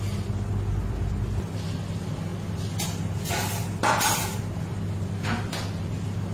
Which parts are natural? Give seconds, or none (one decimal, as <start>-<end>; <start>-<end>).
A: 0.0-6.3